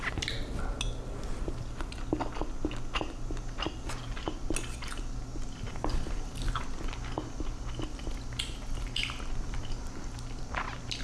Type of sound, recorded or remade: recorded